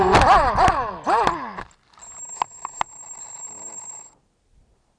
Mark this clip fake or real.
real